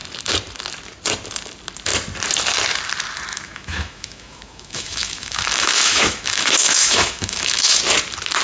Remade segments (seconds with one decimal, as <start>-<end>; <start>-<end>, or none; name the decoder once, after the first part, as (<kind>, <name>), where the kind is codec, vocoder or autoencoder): 3.3-7.8 (autoencoder, DAC-VAE)